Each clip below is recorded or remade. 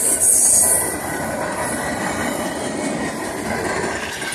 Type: recorded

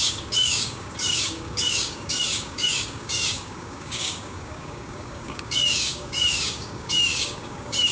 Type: remade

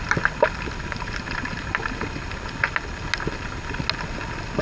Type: recorded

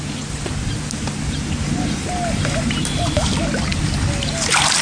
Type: recorded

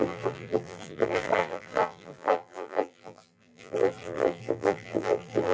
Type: remade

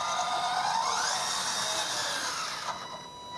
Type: recorded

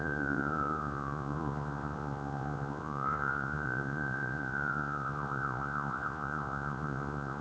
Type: remade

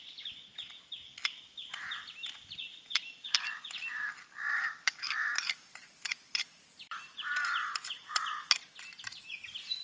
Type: recorded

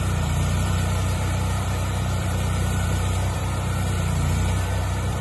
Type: remade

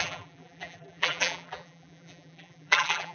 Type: remade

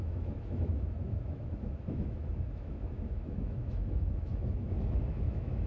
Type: remade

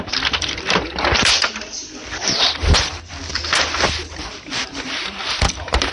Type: remade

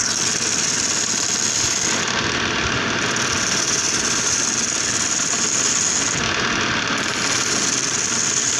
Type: recorded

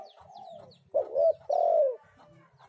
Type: recorded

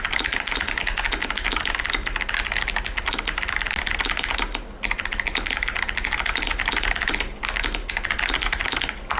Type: recorded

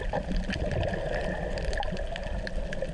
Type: recorded